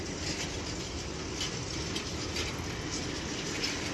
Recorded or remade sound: recorded